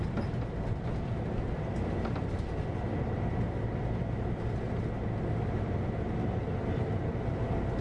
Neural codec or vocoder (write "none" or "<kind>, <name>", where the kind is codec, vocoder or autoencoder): none